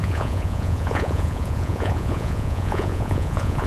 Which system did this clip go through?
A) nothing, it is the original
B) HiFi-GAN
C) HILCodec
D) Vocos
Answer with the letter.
D